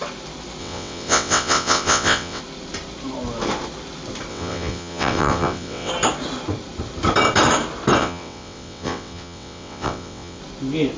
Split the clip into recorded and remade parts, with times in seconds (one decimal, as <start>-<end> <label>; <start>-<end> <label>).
0.0-0.6 recorded; 0.6-2.4 remade; 2.4-4.3 recorded; 4.3-5.9 remade; 5.9-8.0 recorded; 8.0-10.4 remade; 10.4-11.0 recorded